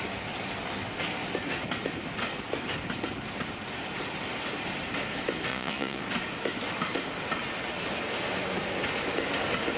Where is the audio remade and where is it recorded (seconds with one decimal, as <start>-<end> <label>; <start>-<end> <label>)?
0.0-5.5 recorded; 5.5-6.0 remade; 6.0-9.8 recorded